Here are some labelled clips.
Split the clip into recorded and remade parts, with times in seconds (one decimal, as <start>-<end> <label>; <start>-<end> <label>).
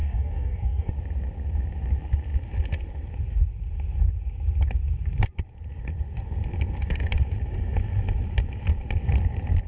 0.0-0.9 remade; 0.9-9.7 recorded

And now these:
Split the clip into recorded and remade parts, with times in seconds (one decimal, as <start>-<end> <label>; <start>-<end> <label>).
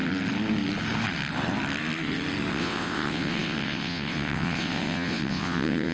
0.0-2.5 recorded; 2.5-5.9 remade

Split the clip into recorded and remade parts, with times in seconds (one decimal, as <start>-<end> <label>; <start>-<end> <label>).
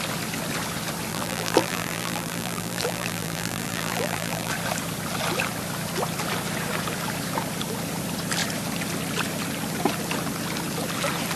0.0-1.1 recorded; 1.1-4.5 remade; 4.5-11.4 recorded